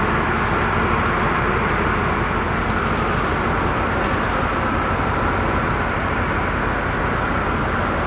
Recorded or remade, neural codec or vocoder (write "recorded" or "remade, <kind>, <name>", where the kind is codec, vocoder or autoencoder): recorded